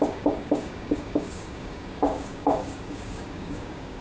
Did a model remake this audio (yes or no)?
yes